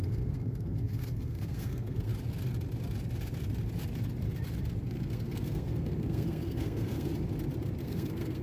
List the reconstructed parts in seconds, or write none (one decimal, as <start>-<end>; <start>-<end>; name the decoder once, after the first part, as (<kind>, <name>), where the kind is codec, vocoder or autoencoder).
0.0-2.1 (codec, SNAC); 4.9-7.1; 7.8-8.4